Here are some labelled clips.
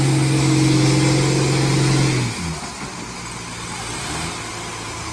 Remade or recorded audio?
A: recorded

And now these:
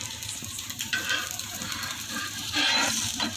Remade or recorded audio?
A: remade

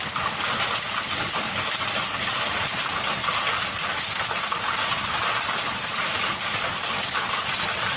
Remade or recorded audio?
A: recorded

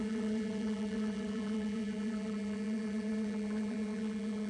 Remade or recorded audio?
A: remade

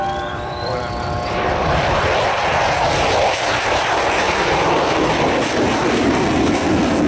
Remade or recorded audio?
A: remade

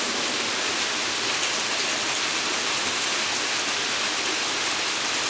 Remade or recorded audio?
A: recorded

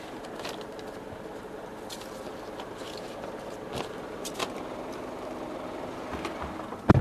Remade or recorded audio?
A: recorded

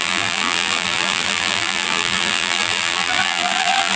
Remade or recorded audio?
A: remade